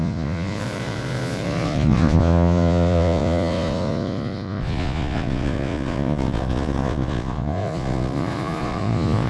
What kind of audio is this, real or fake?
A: fake